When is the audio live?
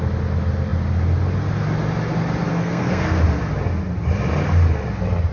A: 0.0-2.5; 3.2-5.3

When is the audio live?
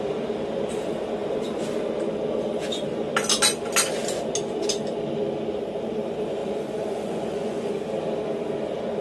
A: 0.0-6.4; 7.7-9.0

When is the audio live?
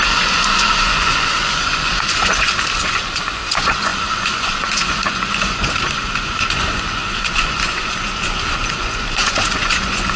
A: none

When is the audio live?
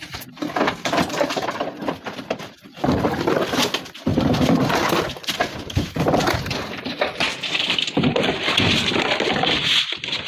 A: 0.0-4.1; 6.0-10.3